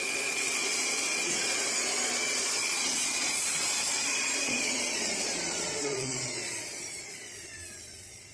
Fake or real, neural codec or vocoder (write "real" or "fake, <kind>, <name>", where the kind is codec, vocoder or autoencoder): fake, vocoder, Vocos